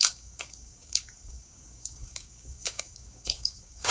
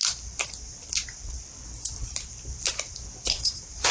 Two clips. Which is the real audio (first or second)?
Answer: second